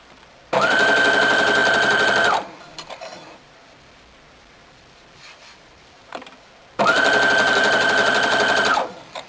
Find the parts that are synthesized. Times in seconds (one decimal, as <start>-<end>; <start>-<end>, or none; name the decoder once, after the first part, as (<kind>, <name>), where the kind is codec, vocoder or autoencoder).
0.0-9.3 (vocoder, BigVGAN v2)